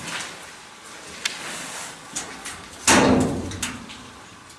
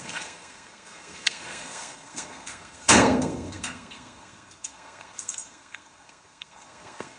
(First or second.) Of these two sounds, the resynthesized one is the second